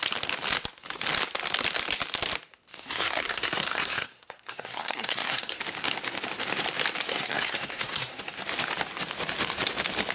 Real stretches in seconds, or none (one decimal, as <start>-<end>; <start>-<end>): 0.0-2.7; 5.6-7.1; 8.2-10.1